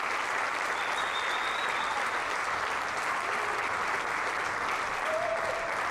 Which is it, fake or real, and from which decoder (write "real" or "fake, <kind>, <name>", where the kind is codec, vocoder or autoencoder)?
real